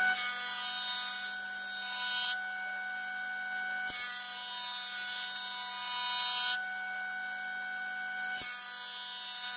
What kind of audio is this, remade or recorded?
recorded